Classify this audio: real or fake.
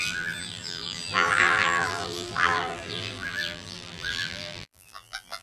fake